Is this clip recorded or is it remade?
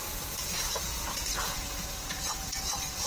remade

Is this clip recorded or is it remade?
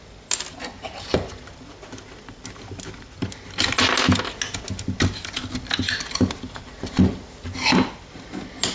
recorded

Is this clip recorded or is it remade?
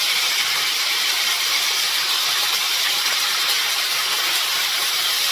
remade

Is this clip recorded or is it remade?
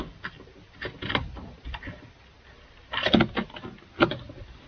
recorded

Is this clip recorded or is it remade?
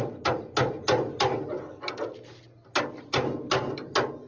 recorded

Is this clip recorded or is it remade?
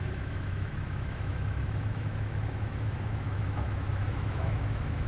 remade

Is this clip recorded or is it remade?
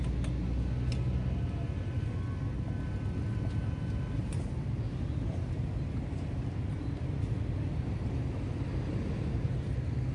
recorded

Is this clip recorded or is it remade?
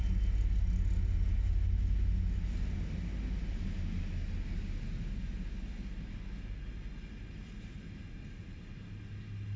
recorded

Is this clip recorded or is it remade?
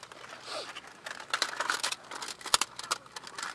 recorded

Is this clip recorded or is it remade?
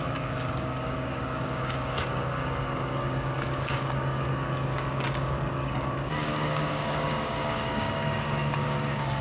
remade